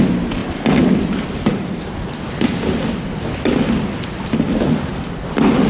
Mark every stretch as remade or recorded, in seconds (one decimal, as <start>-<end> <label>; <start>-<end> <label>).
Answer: 0.0-5.7 recorded